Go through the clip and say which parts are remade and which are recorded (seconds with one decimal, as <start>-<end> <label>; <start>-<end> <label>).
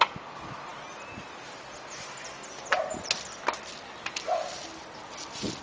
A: 0.0-0.7 remade; 0.7-1.4 recorded; 1.4-2.4 remade; 2.4-5.6 recorded